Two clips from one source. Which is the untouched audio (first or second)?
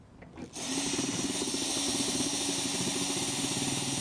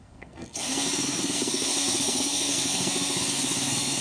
first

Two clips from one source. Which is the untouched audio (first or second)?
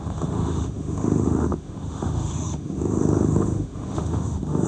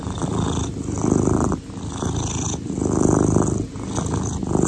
second